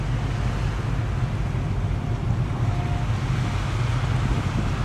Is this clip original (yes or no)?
yes